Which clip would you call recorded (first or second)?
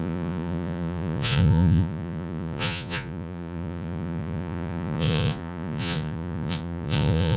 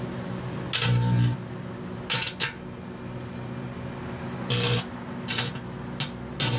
second